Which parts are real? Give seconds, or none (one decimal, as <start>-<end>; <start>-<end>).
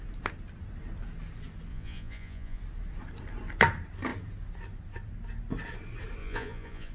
0.0-1.7; 2.6-6.2